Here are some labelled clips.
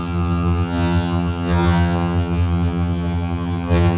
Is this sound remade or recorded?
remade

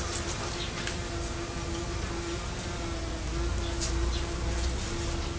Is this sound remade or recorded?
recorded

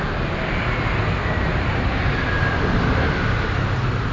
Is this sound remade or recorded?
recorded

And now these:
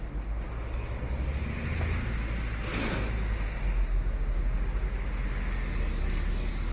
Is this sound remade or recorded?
recorded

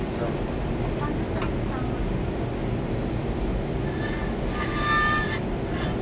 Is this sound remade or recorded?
recorded